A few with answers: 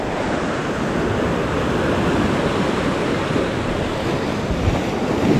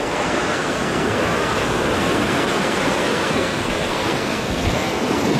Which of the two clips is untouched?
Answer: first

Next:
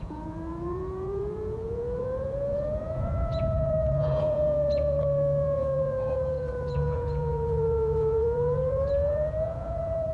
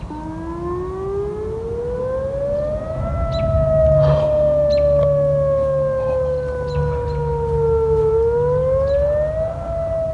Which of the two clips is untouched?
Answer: second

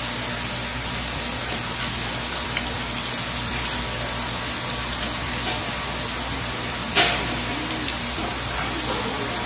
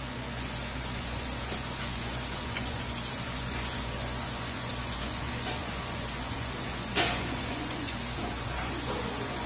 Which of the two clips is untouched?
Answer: first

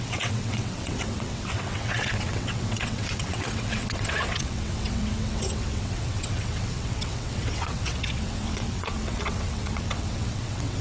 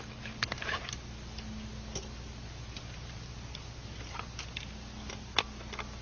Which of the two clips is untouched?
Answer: second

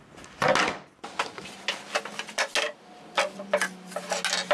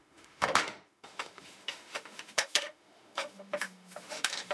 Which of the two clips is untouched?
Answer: first